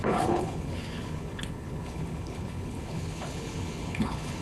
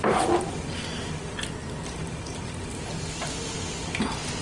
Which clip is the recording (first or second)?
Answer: second